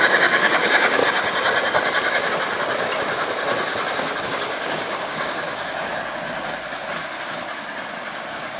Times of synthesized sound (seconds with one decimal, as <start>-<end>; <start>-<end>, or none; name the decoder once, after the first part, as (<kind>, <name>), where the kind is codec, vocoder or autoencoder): 0.0-1.0 (codec, DAC); 4.2-5.9; 8.1-8.6